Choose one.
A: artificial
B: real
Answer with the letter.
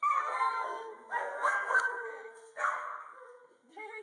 A